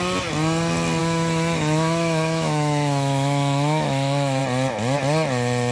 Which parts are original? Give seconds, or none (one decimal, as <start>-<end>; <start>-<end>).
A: 0.0-1.0; 4.4-5.7